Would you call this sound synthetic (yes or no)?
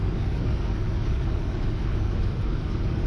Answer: yes